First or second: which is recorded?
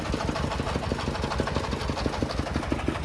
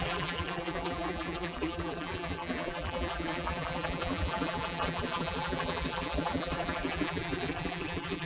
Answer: first